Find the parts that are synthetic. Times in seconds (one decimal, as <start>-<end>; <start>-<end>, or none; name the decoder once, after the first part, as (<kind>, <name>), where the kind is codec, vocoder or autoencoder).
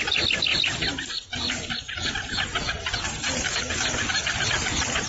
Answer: none